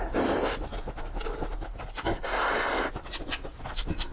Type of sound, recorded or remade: recorded